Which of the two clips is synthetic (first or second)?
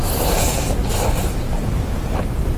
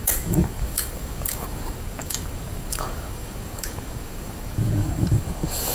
second